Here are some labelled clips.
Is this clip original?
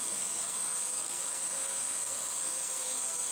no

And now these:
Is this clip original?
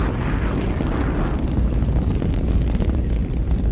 yes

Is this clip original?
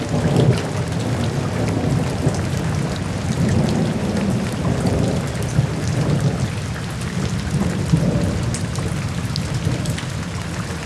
yes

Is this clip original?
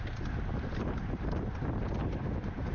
yes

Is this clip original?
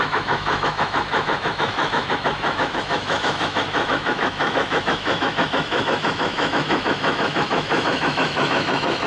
no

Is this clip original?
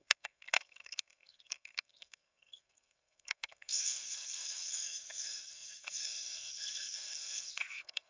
no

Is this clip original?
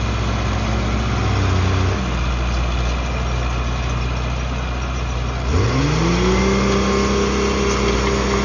yes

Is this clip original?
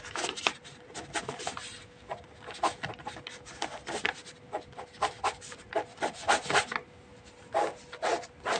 yes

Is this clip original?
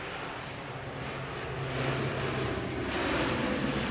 yes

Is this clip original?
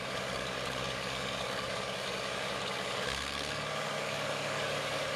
no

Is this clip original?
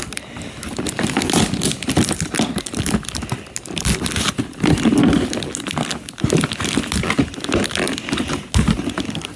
yes